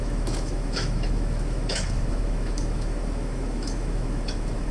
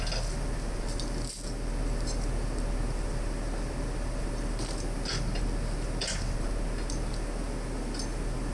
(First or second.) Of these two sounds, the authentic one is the second